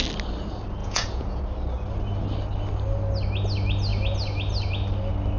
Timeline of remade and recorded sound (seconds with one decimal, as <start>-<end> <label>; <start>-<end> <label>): 0.0-0.8 recorded; 0.8-1.4 remade; 1.4-5.4 recorded